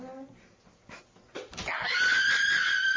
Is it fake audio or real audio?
real